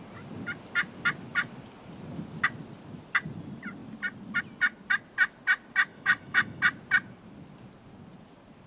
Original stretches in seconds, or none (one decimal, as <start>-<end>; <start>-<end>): 0.0-5.9; 6.6-8.7